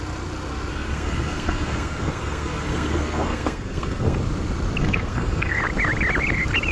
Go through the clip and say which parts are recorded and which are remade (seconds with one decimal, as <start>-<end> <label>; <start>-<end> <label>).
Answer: 0.0-0.7 recorded; 0.7-4.2 remade; 4.2-4.8 recorded; 4.8-5.6 remade; 5.6-6.7 recorded